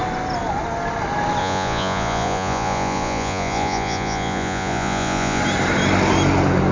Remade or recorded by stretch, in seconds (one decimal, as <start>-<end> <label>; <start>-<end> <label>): 0.0-1.4 recorded; 1.4-5.4 remade; 5.4-6.7 recorded